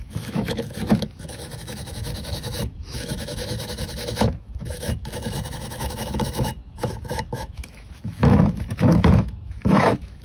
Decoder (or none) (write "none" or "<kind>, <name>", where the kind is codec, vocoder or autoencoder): autoencoder, DAC-VAE